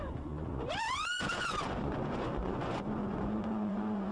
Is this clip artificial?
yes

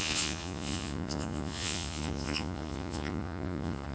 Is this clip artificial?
yes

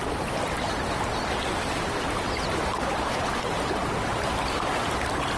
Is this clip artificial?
no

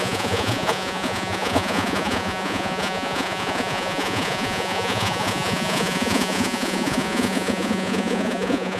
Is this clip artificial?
yes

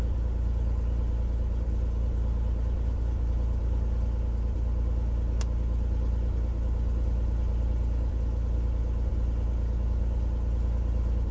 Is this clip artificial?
no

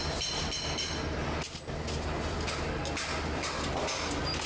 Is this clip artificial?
no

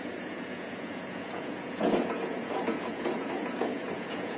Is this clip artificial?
yes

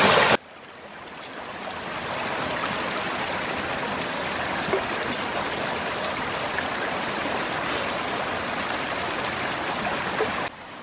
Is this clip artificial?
no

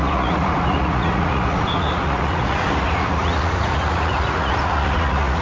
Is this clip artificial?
yes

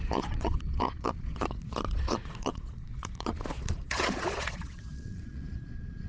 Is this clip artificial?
yes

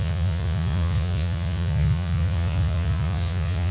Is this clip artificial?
yes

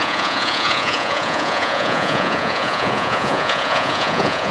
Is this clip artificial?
yes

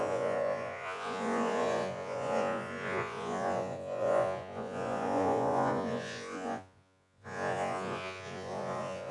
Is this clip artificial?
yes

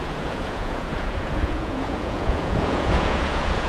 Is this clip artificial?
yes